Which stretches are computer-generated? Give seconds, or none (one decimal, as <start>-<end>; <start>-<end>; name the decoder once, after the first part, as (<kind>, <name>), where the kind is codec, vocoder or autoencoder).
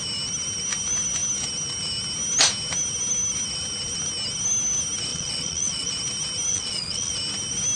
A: 5.1-5.9 (vocoder, Vocos); 6.5-7.1